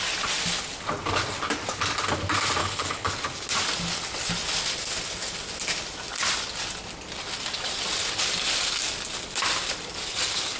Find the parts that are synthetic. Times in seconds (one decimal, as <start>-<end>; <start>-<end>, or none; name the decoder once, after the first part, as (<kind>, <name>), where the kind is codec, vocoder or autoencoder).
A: 2.6-3.1 (codec, HILCodec)

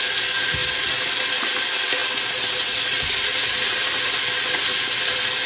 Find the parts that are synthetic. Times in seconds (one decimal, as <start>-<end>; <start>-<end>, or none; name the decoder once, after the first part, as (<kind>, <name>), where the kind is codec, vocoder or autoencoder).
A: none

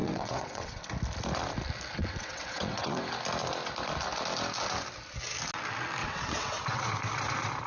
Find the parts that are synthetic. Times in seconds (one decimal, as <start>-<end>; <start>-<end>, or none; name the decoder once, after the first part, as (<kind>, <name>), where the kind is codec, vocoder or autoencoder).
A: 0.0-0.8 (vocoder, WaveNeXt); 2.0-3.0; 6.0-6.8

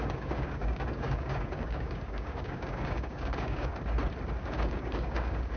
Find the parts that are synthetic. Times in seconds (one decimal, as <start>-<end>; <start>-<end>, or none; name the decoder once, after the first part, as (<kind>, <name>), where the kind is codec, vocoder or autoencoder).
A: 0.0-3.7 (codec, DAC); 4.4-5.6

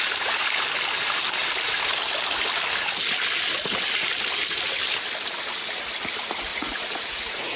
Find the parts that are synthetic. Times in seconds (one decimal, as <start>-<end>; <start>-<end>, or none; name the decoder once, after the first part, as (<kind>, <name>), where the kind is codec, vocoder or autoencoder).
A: 6.5-7.6 (vocoder, Vocos)

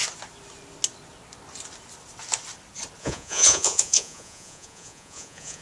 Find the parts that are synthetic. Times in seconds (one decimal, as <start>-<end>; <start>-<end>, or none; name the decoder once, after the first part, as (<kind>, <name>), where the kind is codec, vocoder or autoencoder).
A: 3.0-5.6 (vocoder, Vocos)

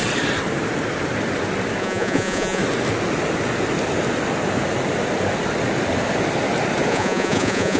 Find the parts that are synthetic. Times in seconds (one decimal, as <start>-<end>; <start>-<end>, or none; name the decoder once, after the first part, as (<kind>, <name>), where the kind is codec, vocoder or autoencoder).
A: 1.8-2.6 (vocoder, Vocos); 6.9-7.8